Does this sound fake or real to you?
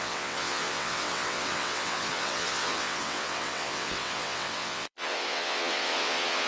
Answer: fake